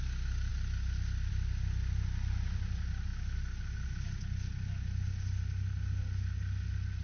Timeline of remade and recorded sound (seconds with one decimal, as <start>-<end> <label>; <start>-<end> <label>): 0.0-7.0 recorded